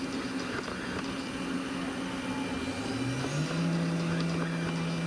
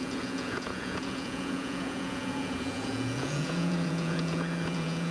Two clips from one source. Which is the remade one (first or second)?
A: second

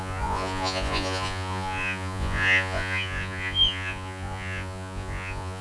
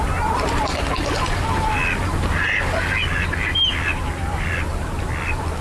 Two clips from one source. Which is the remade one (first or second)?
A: first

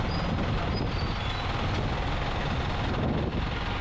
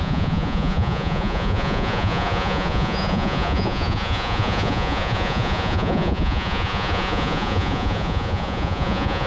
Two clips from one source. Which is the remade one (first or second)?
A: second